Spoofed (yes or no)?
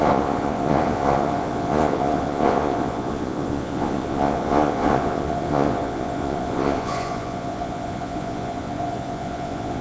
yes